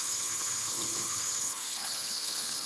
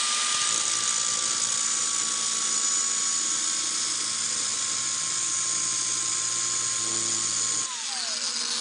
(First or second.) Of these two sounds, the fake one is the first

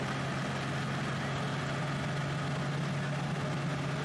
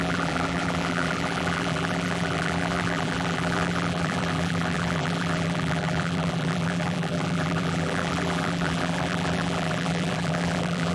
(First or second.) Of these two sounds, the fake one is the second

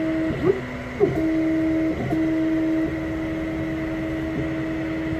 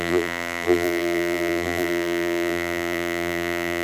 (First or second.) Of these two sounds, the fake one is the second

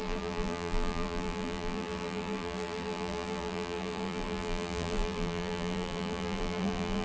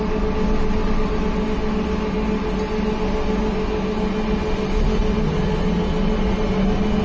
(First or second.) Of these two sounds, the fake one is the first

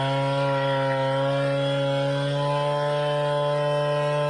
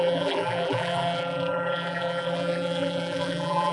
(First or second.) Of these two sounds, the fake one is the second